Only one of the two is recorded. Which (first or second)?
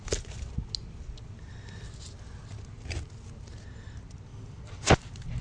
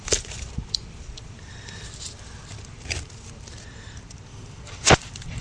first